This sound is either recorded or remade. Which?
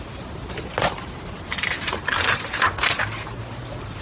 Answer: recorded